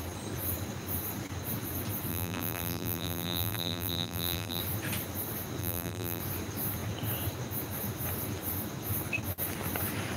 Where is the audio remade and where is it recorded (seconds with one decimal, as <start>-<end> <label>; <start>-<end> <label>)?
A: 0.0-2.1 recorded; 2.1-4.6 remade; 4.6-5.6 recorded; 5.6-6.2 remade; 6.2-10.2 recorded